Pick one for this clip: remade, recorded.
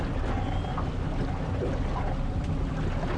recorded